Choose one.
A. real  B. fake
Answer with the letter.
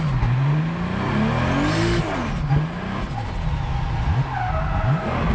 A